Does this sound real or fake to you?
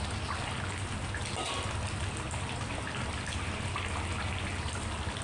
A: real